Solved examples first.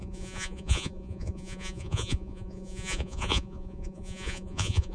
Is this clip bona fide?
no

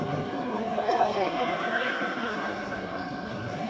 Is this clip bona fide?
no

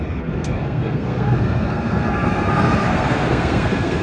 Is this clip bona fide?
no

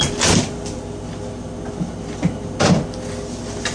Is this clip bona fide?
yes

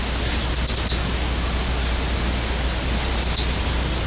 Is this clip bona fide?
yes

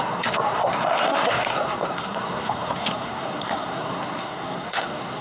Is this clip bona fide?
no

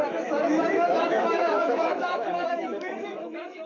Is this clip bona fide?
no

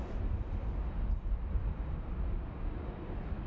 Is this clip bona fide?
yes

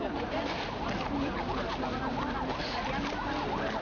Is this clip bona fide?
yes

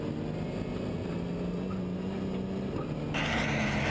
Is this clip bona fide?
yes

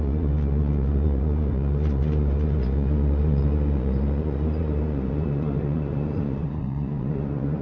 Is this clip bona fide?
no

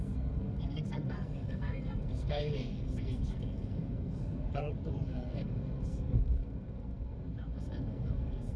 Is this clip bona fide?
no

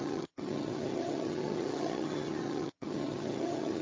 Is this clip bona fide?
no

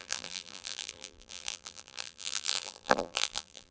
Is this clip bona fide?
no